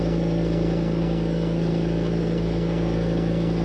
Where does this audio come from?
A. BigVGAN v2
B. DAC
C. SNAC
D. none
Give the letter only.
C